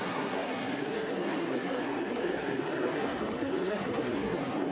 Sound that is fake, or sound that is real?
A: fake